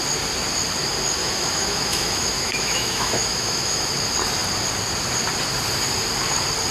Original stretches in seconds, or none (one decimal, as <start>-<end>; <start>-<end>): 0.0-1.2; 3.9-6.7